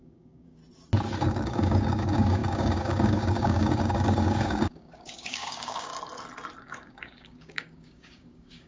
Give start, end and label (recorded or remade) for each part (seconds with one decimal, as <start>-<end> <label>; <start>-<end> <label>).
0.0-0.6 remade; 0.6-1.3 recorded; 1.3-5.9 remade; 5.9-6.6 recorded; 6.6-8.7 remade